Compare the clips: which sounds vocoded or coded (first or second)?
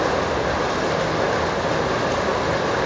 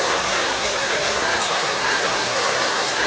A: second